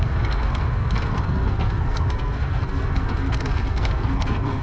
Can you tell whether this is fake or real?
fake